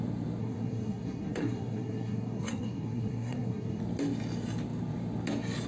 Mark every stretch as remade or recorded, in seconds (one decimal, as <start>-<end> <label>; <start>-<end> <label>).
0.0-0.4 recorded; 0.4-3.8 remade; 3.8-5.7 recorded